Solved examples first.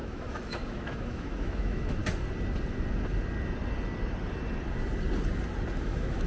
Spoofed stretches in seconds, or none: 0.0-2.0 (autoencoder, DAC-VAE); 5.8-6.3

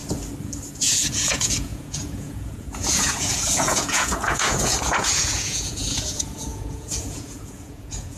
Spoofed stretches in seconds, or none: 0.7-8.2 (vocoder, Vocos)

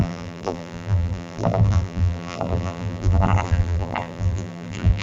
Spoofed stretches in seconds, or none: 0.0-5.0 (vocoder, BigVGAN v2)

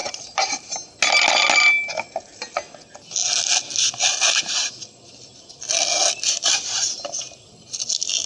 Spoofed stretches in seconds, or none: 0.0-0.7 (vocoder, BigVGAN v2)